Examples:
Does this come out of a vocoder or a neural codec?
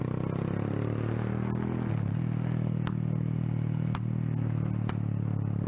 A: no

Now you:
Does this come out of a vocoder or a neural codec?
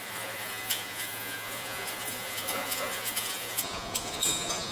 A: yes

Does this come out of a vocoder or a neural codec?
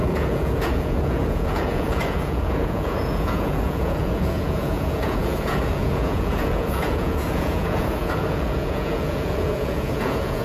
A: yes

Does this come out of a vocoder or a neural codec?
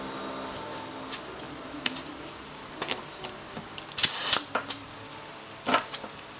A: no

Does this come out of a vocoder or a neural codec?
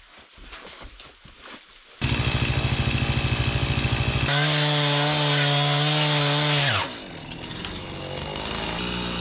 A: no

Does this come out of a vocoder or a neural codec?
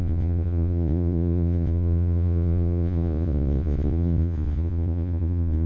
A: yes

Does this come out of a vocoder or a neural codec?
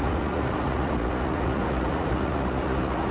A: yes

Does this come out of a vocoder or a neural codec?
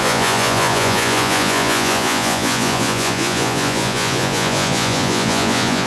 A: yes